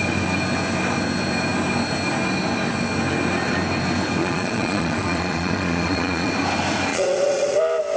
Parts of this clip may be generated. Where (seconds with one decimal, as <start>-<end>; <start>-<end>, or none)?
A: 4.2-6.3; 6.9-7.6